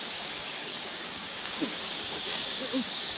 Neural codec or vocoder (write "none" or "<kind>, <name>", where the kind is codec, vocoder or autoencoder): codec, DAC